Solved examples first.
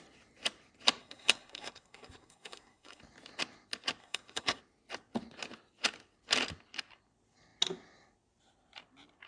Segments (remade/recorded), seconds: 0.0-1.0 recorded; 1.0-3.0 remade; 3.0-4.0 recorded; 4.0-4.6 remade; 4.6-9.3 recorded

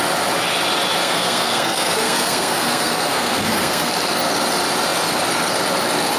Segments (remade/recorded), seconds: 0.0-1.0 recorded; 1.0-3.9 remade; 3.9-6.2 recorded

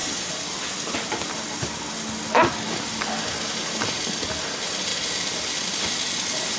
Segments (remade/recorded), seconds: 0.0-6.6 recorded

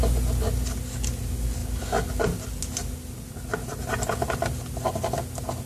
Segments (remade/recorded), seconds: 0.0-5.7 recorded